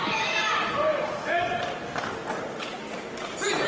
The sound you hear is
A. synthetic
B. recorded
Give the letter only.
B